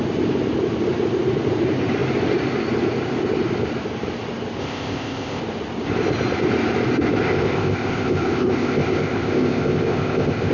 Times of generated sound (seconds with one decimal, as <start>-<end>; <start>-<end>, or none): 4.6-5.4; 7.2-10.5